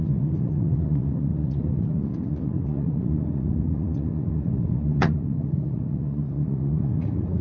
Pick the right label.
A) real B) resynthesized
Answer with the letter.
B